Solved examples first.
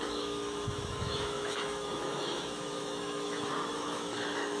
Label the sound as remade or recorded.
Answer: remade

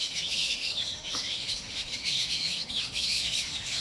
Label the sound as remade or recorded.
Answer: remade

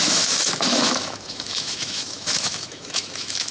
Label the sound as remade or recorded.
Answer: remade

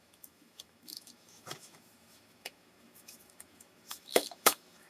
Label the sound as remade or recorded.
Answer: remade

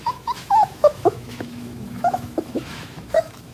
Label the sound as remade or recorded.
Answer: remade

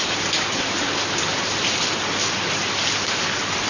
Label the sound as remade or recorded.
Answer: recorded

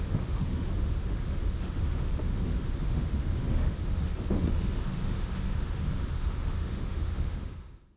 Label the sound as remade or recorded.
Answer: remade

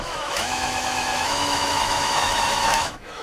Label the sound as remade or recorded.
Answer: remade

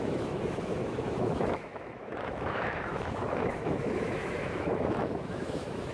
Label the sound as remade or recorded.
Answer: remade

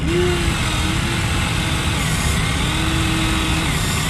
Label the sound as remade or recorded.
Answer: recorded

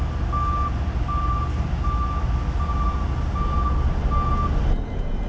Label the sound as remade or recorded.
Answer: recorded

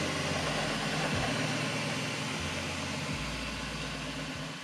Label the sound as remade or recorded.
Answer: recorded